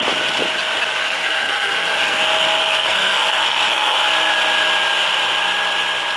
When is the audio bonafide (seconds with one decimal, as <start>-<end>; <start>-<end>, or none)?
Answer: 0.0-1.0; 2.2-2.6; 4.0-6.2